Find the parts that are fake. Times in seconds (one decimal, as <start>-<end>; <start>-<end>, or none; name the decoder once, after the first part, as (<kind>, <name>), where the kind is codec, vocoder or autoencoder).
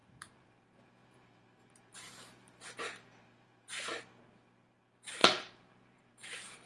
0.0-4.0 (vocoder, BigVGAN v2); 5.2-6.7